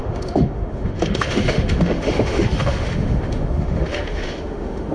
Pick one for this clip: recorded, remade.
remade